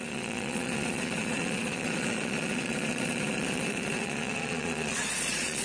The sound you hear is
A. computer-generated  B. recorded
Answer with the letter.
A